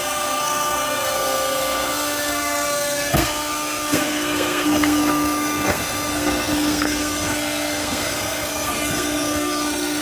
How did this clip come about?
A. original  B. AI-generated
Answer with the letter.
B